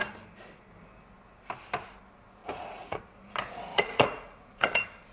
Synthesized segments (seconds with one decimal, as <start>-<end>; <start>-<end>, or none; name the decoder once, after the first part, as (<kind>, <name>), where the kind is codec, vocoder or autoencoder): 2.4-3.0 (vocoder, Vocos); 3.7-5.1